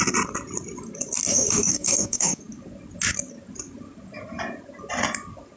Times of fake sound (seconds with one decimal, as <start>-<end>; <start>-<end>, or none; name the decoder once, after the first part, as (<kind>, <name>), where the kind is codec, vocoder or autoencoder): 1.3-2.4 (codec, DAC)